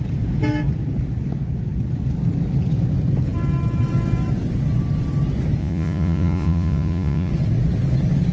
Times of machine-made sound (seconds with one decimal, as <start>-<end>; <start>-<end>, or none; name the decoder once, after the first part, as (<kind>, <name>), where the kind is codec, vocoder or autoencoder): 5.6-7.3 (vocoder, Vocos)